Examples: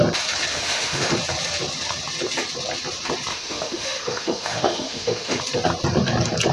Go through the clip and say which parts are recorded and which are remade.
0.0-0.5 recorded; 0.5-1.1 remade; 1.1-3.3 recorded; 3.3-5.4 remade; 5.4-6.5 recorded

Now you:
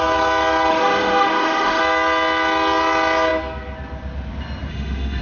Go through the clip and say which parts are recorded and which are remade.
0.0-0.7 recorded; 0.7-1.8 remade; 1.8-4.7 recorded; 4.7-5.2 remade